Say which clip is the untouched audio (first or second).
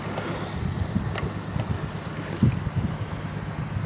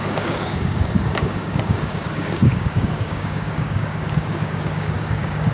first